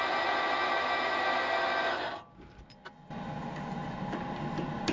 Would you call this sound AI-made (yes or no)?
no